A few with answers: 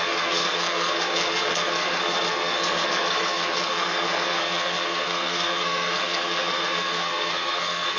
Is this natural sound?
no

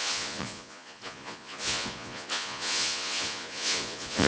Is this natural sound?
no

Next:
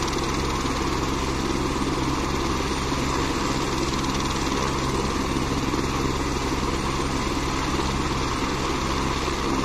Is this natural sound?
yes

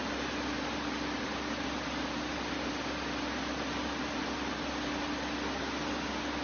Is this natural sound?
yes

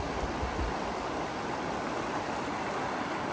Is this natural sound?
yes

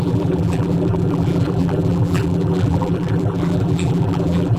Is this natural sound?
no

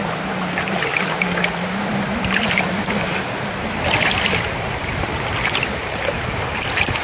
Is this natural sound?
yes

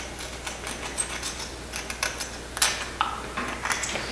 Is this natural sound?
yes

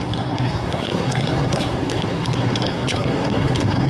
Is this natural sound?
no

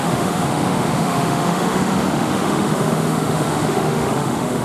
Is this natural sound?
no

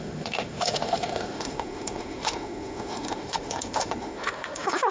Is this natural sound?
no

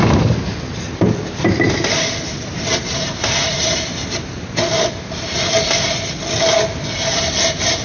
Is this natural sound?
yes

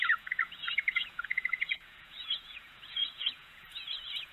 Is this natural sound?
no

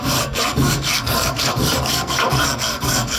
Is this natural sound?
no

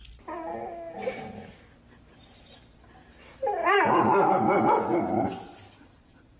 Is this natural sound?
yes